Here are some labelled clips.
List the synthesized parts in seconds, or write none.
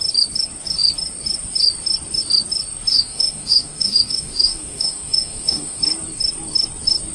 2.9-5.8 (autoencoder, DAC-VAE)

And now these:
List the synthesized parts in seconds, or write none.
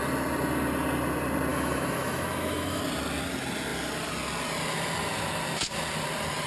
1.5-2.8 (autoencoder, DAC-VAE)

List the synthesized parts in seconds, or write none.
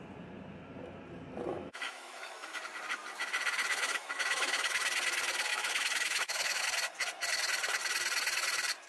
1.5-2.6 (autoencoder, DAC-VAE); 3.7-4.7; 5.5-6.6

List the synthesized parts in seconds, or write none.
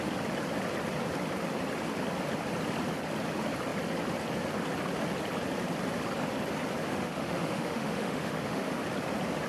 6.9-8.8 (autoencoder, DAC-VAE)